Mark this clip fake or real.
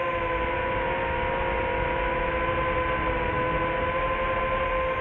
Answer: real